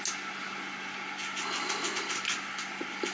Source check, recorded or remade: recorded